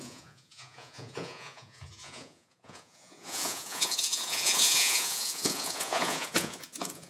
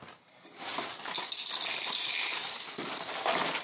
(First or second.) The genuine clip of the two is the second